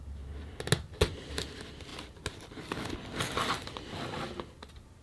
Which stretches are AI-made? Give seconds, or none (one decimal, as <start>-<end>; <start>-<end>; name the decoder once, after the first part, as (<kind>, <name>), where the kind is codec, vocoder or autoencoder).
none